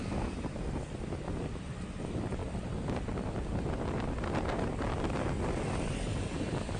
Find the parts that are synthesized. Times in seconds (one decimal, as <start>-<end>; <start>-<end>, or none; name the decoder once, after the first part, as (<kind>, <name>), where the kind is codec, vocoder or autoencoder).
none